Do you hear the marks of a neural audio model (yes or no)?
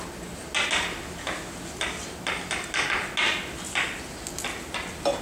no